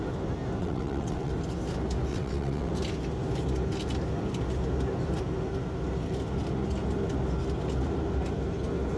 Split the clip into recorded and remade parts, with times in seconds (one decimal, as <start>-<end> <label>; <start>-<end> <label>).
0.0-0.6 recorded; 0.6-1.3 remade; 1.3-2.1 recorded; 2.1-2.7 remade; 2.7-9.0 recorded